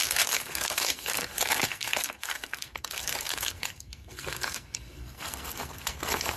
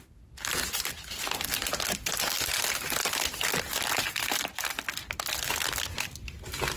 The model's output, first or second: first